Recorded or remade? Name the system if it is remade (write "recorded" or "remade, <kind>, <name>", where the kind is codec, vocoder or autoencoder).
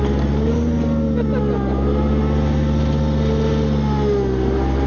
recorded